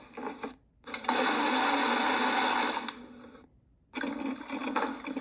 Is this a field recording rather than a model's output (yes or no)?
yes